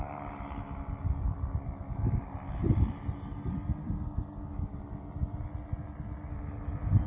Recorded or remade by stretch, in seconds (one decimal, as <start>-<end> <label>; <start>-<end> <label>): 0.0-7.1 recorded